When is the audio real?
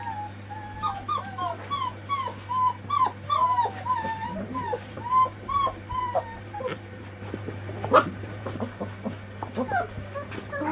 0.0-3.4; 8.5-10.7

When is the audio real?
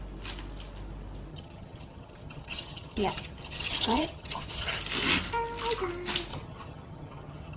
0.0-1.3; 4.8-6.3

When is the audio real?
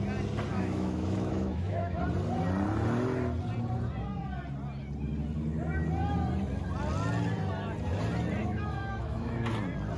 0.0-0.5; 2.0-8.4; 9.5-10.0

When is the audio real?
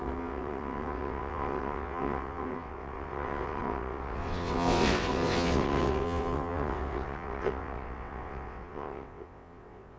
none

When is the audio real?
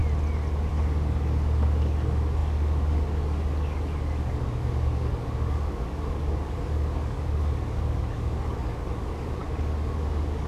0.0-0.7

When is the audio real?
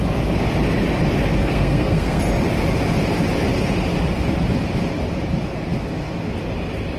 0.0-1.4; 2.2-7.0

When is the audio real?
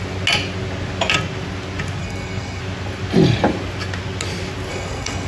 0.0-2.0; 2.6-4.7